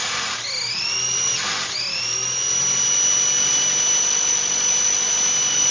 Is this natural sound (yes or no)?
yes